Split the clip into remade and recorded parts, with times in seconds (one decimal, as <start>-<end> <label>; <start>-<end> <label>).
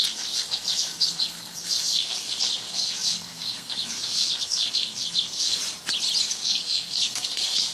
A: 0.0-5.6 remade; 5.6-6.3 recorded; 6.3-7.7 remade